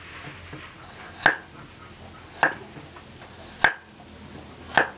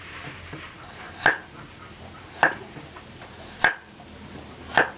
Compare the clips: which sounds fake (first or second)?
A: second